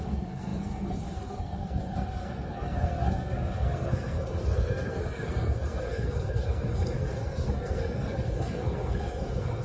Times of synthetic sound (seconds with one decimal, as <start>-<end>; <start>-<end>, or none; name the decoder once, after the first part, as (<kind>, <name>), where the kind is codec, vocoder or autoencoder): 0.0-9.6 (codec, SNAC)